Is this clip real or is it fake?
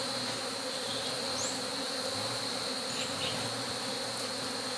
real